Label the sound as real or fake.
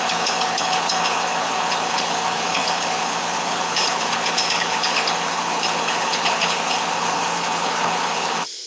fake